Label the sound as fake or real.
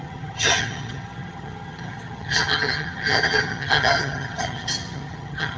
fake